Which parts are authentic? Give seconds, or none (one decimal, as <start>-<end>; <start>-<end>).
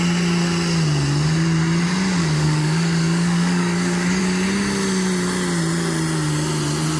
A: 0.0-2.2; 4.2-7.0